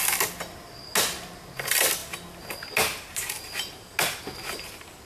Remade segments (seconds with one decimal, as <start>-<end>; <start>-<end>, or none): none